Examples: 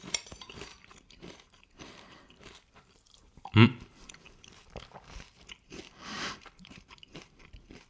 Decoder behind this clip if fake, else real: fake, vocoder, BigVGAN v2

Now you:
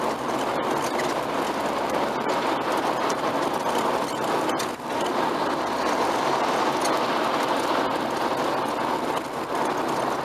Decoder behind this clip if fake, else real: real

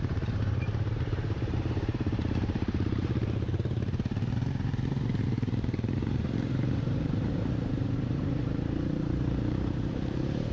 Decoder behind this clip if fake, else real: fake, vocoder, BigVGAN v2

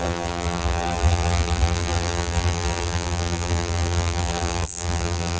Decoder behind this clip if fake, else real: fake, vocoder, BigVGAN v2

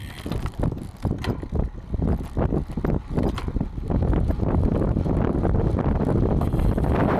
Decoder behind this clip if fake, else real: real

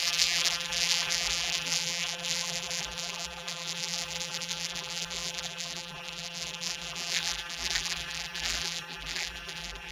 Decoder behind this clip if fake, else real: fake, vocoder, BigVGAN v2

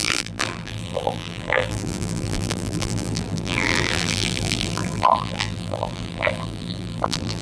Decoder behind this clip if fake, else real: fake, vocoder, BigVGAN v2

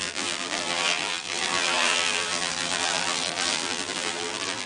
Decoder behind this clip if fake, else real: fake, vocoder, BigVGAN v2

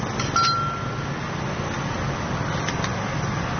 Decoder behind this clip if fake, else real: real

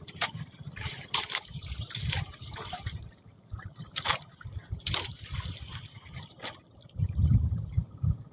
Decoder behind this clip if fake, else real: fake, vocoder, BigVGAN v2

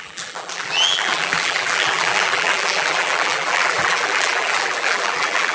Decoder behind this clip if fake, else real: fake, vocoder, BigVGAN v2